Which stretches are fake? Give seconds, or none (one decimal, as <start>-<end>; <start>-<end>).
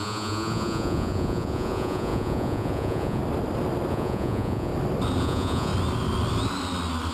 0.0-3.2; 3.9-4.7; 5.2-5.7